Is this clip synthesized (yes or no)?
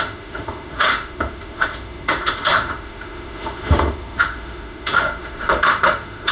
yes